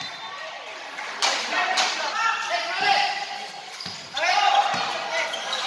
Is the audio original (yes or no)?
yes